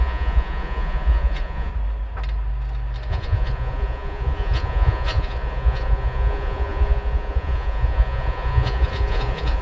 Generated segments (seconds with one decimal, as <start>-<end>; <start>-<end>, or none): 0.0-1.7; 3.1-9.6